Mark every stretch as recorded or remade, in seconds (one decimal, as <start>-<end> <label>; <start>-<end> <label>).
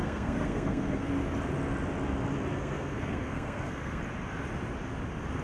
0.0-1.1 remade; 1.1-2.6 recorded; 2.6-4.0 remade; 4.0-5.4 recorded